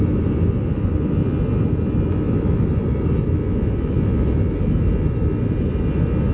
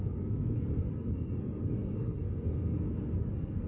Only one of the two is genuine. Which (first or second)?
first